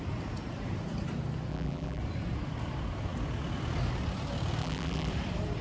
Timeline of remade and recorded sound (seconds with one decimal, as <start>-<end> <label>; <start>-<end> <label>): 0.0-1.5 recorded; 1.5-2.0 remade; 2.0-4.6 recorded; 4.6-5.1 remade; 5.1-5.6 recorded